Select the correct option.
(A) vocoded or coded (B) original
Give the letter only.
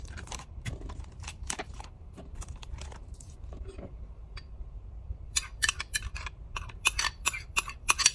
A